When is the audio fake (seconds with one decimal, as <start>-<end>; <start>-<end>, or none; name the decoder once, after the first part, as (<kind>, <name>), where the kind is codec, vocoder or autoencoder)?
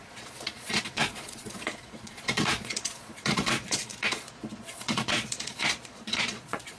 0.0-6.8 (vocoder, Vocos)